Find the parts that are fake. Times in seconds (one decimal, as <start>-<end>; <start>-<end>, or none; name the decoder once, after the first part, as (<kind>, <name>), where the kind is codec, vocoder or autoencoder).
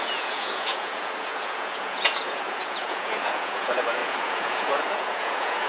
0.0-5.7 (vocoder, Vocos)